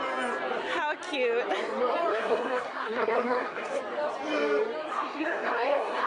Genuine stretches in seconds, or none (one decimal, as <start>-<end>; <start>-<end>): 0.0-2.1; 3.8-4.9